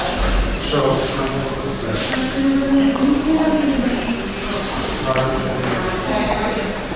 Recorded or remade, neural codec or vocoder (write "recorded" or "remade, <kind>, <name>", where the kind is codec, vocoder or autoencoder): recorded